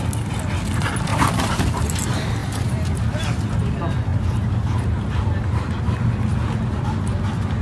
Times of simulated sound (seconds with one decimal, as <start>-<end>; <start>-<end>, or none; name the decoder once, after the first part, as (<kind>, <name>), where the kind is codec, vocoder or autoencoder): 1.1-1.6 (vocoder, BigVGAN v2); 2.4-3.0; 4.1-5.8